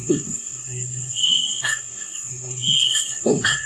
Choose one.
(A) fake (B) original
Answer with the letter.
A